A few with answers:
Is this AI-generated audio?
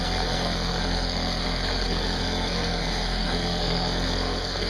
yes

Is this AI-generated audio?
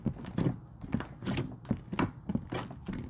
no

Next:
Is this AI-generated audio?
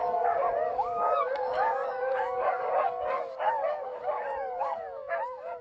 yes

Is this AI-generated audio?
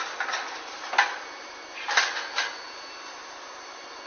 no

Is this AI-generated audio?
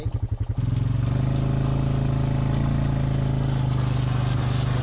no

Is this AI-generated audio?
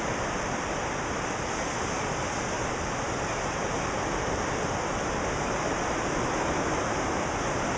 no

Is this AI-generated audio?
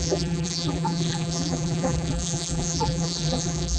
yes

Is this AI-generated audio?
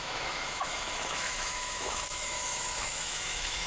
yes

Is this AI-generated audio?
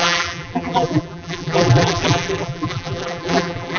yes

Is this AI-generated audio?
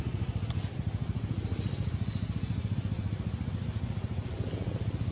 no